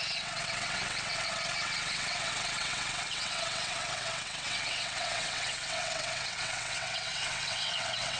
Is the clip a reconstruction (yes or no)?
yes